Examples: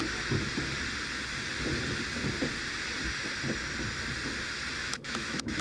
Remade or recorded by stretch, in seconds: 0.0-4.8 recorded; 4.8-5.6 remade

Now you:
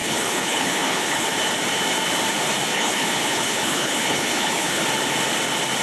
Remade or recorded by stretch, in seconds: 0.0-1.3 remade; 1.3-2.7 recorded; 2.7-4.8 remade; 4.8-5.8 recorded

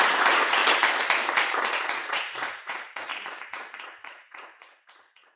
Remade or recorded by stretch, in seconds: 0.0-0.6 remade; 0.6-1.7 recorded; 1.7-3.1 remade; 3.1-3.7 recorded; 3.7-5.4 remade